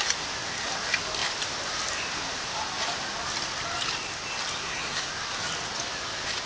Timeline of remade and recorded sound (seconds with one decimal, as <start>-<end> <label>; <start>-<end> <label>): 0.0-4.6 recorded; 4.6-5.1 remade; 5.1-6.5 recorded